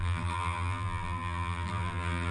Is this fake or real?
fake